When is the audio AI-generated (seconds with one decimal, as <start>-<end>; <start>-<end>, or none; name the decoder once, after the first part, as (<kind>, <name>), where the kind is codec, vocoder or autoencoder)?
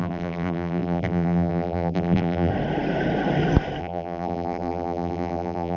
0.0-2.5 (vocoder, BigVGAN v2); 3.8-5.8